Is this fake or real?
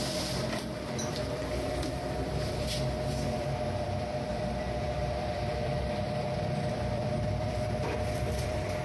fake